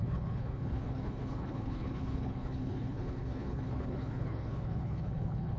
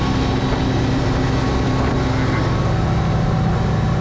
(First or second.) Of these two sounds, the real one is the second